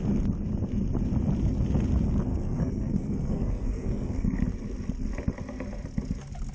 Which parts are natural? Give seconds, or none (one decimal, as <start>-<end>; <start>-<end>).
0.0-2.3; 4.4-6.5